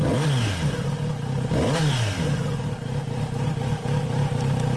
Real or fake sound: real